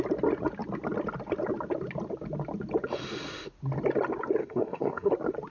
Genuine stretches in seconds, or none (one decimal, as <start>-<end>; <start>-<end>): 0.0-4.4; 5.1-5.5